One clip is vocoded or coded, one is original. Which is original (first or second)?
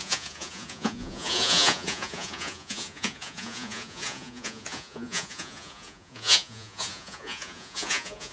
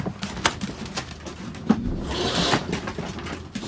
second